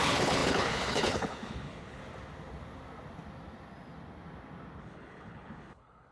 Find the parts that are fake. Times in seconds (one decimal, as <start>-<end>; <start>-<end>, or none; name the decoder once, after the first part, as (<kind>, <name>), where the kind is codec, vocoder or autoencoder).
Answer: 0.0-2.0 (codec, HILCodec); 4.8-6.1